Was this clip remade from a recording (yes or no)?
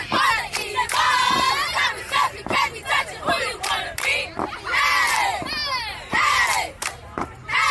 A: yes